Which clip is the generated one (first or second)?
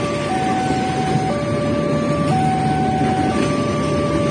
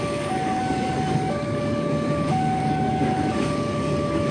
second